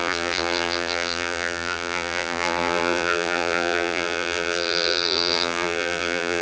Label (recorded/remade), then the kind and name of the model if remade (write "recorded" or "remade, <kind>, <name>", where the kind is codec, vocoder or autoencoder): remade, vocoder, BigVGAN v2